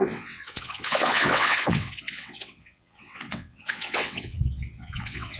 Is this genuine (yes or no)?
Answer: no